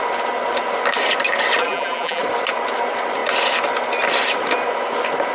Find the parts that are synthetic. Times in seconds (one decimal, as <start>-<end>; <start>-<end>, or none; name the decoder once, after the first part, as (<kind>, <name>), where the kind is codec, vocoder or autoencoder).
1.6-2.2 (vocoder, BigVGAN v2)